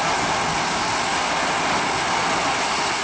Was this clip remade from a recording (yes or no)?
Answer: no